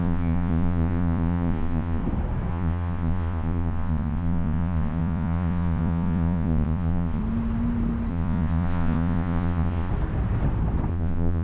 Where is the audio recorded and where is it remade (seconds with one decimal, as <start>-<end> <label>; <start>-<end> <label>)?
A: 0.0-2.0 remade; 2.0-2.5 recorded; 2.5-7.2 remade; 7.2-8.1 recorded; 8.1-9.9 remade; 9.9-10.9 recorded; 10.9-11.4 remade